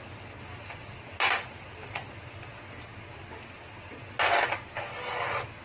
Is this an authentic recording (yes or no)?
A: yes